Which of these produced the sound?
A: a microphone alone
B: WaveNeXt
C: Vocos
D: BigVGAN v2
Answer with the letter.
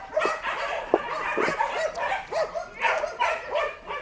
A